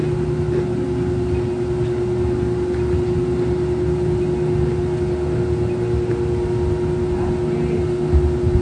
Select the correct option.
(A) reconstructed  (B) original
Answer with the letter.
B